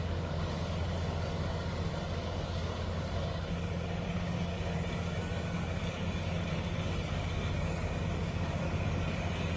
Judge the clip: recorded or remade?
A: remade